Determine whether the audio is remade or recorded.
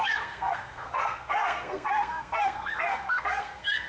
remade